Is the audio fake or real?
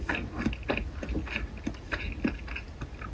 real